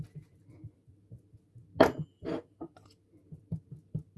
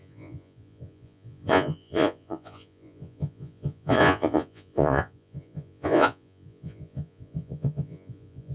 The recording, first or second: first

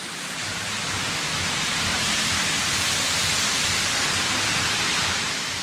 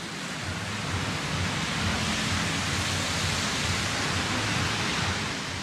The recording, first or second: second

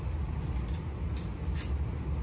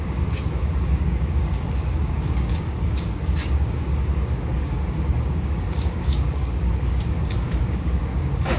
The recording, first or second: first